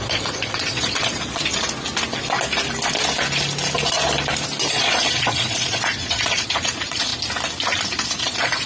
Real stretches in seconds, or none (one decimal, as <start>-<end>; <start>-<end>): 1.5-4.7; 7.1-8.2